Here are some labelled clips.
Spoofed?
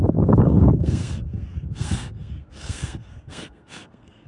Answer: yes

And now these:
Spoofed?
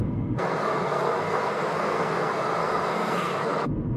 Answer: yes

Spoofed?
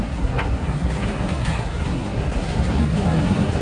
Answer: yes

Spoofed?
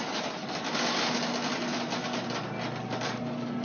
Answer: no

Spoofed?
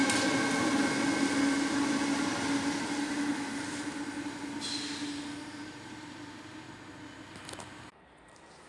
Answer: no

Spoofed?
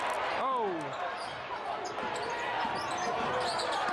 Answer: no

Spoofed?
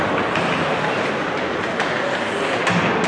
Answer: no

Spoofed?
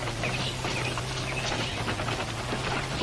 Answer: no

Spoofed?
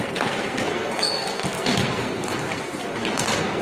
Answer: yes